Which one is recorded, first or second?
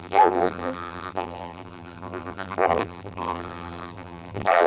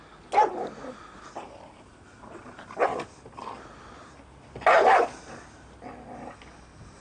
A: second